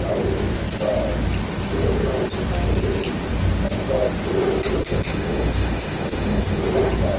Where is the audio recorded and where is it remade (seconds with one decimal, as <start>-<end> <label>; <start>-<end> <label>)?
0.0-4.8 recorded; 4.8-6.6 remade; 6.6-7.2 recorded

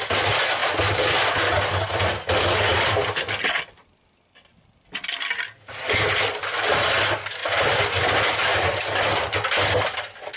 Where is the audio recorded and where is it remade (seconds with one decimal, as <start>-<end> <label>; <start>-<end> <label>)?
0.0-10.4 recorded

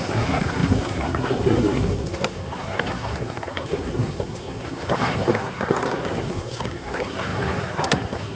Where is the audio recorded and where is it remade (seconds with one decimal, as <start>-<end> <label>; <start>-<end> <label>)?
0.0-8.4 remade

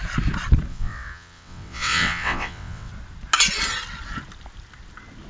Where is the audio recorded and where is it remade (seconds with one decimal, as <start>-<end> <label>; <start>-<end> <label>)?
0.0-0.7 recorded; 0.7-2.9 remade; 2.9-5.3 recorded

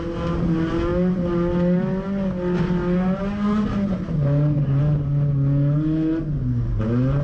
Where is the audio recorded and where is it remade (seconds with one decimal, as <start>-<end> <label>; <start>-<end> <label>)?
0.0-7.2 recorded